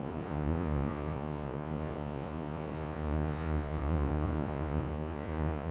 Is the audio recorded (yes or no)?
no